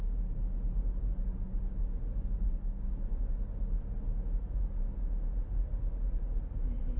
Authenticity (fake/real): real